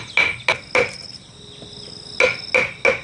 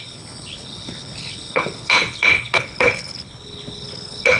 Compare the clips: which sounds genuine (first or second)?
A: first